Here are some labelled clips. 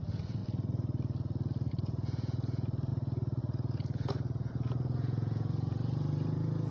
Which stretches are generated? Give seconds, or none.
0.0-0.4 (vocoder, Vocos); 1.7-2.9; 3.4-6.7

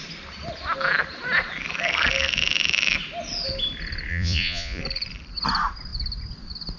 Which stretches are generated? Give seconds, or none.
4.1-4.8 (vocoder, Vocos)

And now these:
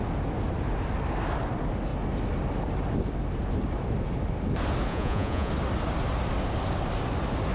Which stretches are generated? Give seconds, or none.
4.9-5.5 (vocoder, Vocos)

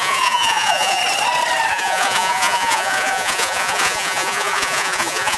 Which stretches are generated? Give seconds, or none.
0.0-1.0 (vocoder, Vocos); 1.7-5.4

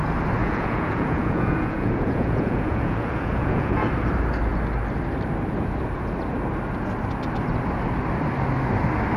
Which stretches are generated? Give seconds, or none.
0.4-3.9 (vocoder, Vocos)

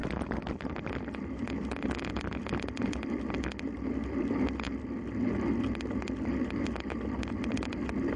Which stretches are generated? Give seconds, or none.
none

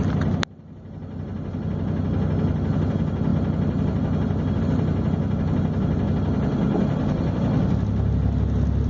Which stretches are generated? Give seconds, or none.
none